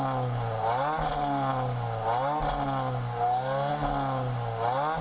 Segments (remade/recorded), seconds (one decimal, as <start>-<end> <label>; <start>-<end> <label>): 0.0-5.0 recorded